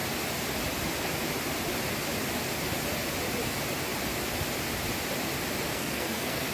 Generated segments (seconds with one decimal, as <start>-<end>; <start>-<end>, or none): 5.7-6.5